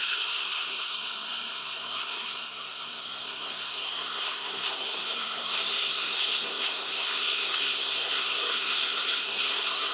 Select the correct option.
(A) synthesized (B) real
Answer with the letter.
A